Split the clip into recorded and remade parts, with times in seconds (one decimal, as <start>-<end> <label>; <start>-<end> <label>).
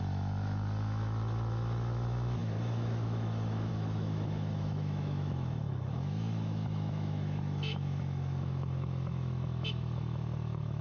0.0-10.8 remade